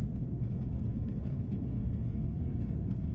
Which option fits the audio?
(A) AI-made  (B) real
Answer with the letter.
A